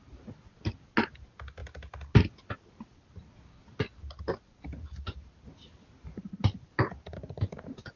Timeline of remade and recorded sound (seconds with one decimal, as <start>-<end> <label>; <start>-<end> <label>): 0.0-8.0 recorded